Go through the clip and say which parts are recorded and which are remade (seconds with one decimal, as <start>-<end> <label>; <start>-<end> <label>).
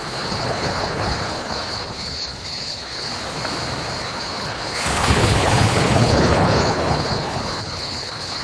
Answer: 0.0-3.1 remade; 3.1-4.0 recorded; 4.0-8.4 remade